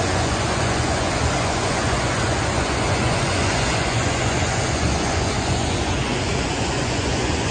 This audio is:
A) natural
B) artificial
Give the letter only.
B